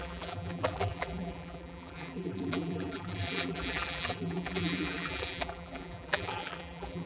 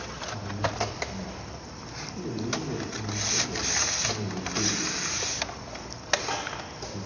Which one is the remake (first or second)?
first